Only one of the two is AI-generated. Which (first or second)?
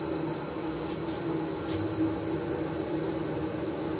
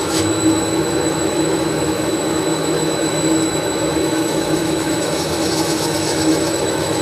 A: second